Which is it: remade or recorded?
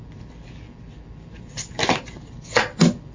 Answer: recorded